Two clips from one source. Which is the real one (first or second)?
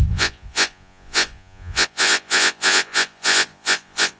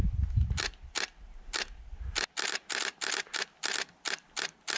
second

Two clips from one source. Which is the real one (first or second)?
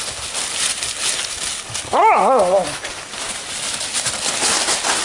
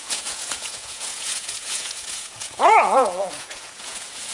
first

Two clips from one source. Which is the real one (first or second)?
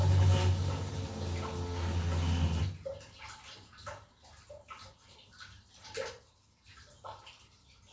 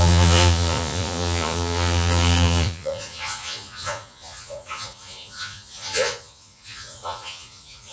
first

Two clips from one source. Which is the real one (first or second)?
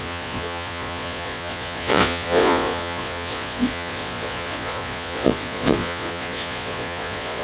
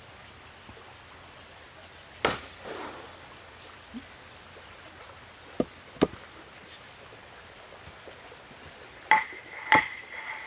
second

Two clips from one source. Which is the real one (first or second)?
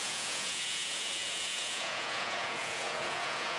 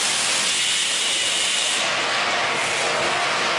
second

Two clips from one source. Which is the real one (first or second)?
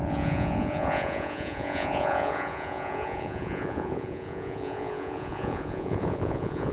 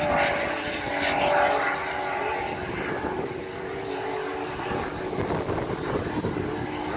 second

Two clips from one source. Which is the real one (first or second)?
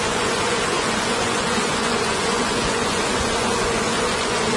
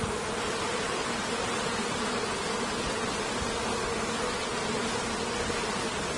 second